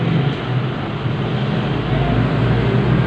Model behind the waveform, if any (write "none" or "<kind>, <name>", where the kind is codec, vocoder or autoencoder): none